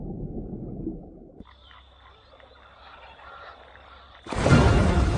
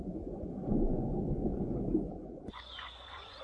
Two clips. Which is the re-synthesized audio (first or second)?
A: second